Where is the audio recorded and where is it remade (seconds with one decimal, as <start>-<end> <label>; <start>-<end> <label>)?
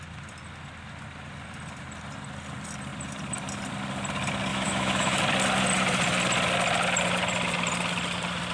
0.0-4.5 recorded; 4.5-5.2 remade; 5.2-8.5 recorded